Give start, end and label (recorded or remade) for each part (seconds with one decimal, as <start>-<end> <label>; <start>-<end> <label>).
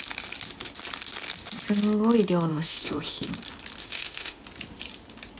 0.0-2.5 recorded; 2.5-3.3 remade; 3.3-3.8 recorded; 3.8-4.4 remade; 4.4-5.4 recorded